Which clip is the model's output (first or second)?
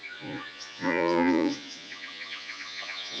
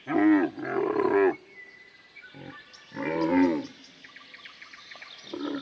first